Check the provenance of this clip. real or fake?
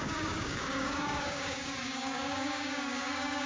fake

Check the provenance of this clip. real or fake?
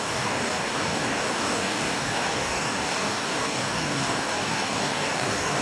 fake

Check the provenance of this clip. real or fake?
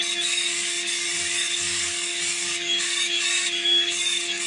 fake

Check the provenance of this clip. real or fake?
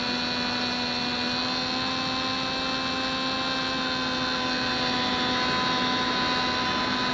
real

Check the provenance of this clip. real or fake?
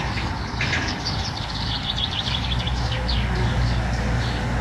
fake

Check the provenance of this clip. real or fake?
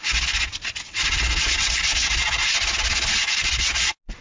real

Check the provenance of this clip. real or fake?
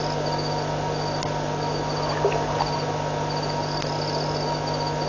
real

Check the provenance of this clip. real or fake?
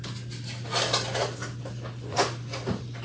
real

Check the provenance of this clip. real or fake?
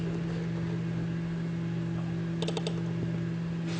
real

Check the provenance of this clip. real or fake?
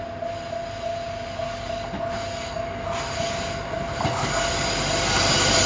real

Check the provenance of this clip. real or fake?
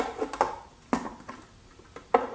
real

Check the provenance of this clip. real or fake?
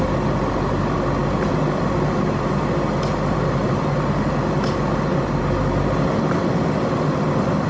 real